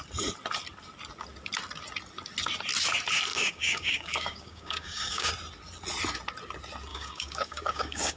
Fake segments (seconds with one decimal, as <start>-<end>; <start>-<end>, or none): 3.3-5.3; 6.9-8.2